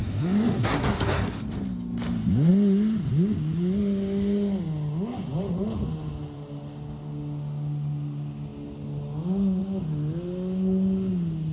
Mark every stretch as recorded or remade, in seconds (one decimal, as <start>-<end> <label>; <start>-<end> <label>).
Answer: 0.0-1.4 remade; 1.4-11.5 recorded